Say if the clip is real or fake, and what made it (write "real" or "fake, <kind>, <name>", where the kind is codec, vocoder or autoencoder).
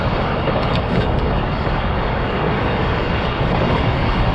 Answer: fake, codec, DAC